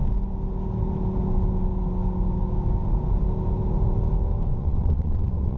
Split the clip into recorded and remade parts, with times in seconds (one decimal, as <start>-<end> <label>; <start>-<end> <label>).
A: 0.0-4.5 recorded; 4.5-5.6 remade